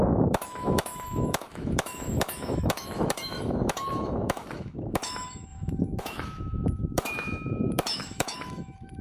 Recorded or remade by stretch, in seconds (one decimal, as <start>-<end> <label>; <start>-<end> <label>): 0.0-9.0 remade